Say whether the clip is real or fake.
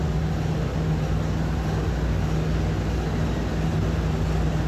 real